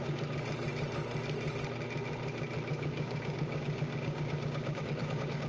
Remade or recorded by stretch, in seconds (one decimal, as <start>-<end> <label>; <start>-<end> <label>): 0.0-2.7 recorded; 2.7-5.5 remade